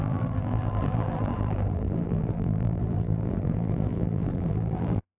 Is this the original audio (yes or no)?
no